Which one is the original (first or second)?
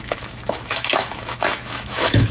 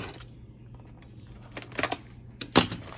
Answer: second